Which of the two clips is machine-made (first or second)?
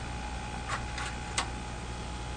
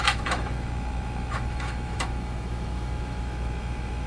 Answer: second